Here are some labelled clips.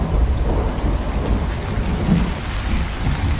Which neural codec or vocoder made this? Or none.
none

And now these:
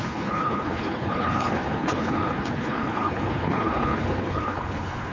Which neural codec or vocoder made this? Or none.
codec, HILCodec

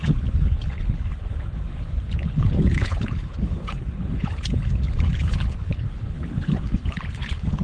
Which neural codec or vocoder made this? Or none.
codec, HILCodec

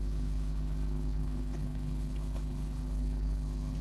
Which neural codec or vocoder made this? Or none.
codec, HILCodec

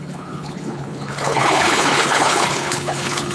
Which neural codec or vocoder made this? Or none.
codec, HILCodec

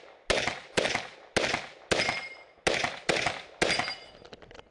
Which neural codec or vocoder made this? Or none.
none